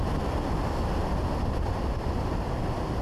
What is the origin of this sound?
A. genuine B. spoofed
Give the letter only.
A